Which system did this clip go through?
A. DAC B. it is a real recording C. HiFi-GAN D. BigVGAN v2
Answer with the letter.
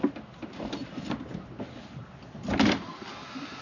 B